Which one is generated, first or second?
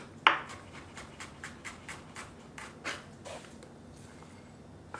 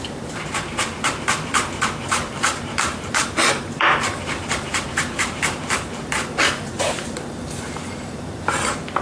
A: second